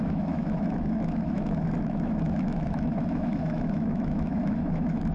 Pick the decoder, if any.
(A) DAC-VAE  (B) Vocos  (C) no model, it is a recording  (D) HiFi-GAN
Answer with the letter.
A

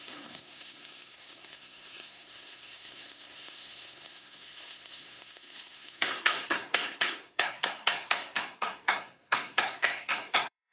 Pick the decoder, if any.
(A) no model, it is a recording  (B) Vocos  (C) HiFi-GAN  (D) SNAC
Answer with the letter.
D